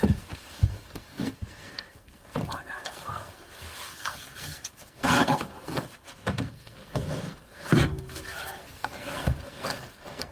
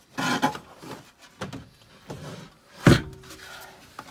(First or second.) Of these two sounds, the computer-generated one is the first